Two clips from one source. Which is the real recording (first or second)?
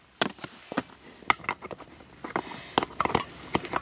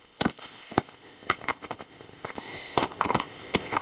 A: first